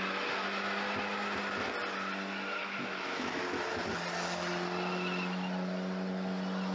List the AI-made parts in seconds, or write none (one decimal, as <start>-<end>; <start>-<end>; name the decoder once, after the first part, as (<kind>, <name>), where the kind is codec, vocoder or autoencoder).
2.6-3.4 (autoencoder, DAC-VAE)